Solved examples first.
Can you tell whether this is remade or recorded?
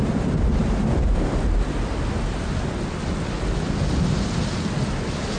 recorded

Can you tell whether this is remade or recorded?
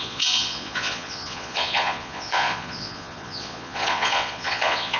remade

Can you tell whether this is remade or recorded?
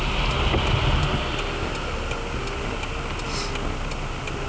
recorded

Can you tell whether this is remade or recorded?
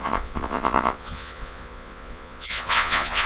remade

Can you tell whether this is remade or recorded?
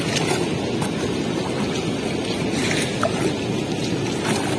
recorded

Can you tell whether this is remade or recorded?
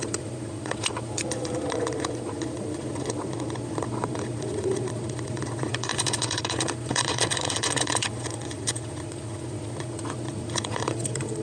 remade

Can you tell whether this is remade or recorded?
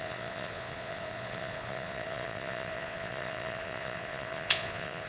remade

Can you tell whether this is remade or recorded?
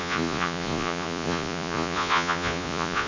remade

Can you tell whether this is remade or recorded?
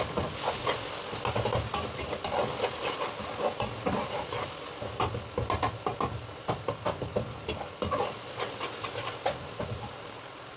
recorded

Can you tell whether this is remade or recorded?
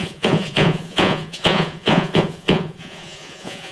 remade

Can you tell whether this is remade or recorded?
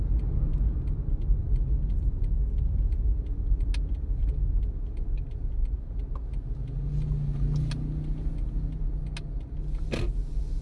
recorded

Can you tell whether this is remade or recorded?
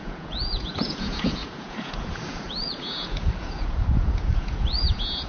remade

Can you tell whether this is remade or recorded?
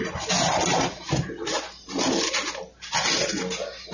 recorded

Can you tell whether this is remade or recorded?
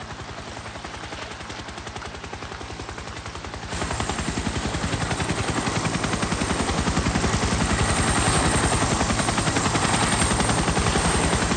recorded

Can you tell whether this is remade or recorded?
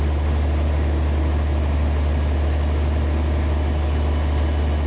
recorded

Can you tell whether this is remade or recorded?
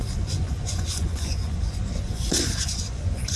remade